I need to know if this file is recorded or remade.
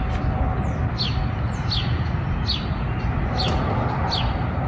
recorded